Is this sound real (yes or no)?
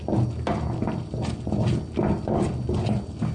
yes